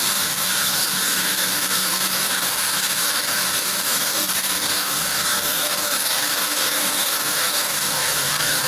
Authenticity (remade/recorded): remade